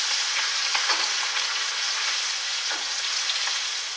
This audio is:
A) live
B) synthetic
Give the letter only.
B